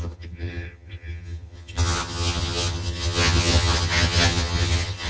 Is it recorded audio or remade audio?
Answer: remade